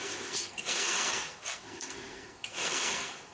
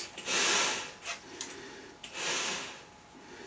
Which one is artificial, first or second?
first